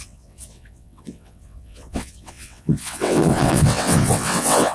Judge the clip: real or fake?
fake